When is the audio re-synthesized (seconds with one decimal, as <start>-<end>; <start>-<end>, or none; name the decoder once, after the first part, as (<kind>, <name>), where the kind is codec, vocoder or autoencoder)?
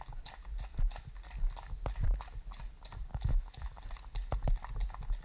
3.1-3.8 (autoencoder, DAC-VAE)